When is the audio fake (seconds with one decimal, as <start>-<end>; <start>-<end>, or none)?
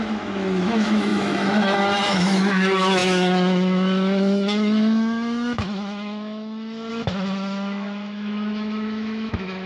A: 0.0-9.7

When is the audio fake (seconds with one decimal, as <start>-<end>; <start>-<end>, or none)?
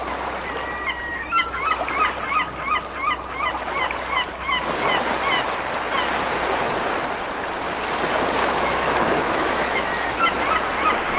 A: 1.1-1.9; 8.4-10.4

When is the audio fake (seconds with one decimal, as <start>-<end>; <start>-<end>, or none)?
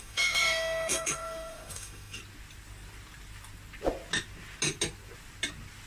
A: 0.0-2.2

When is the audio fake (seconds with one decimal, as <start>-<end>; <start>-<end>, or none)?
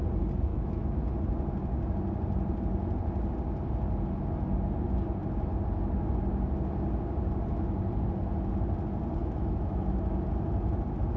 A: 0.5-1.0; 9.2-10.0